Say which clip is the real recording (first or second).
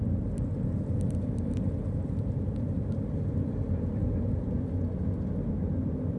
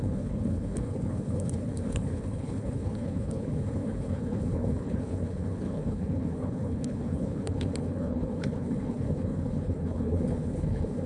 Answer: first